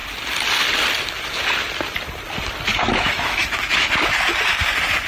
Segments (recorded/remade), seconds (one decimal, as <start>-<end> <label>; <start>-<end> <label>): 0.0-2.7 recorded; 2.7-3.9 remade; 3.9-5.1 recorded